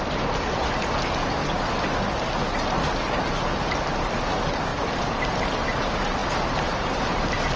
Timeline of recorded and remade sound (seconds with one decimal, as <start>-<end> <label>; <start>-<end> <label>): 0.0-7.6 recorded